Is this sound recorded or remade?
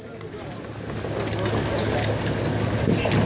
recorded